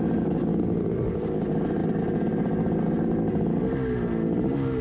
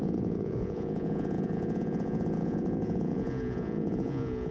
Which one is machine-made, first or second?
second